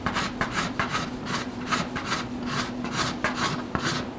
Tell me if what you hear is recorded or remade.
recorded